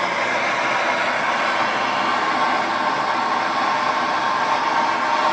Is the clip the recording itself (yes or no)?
yes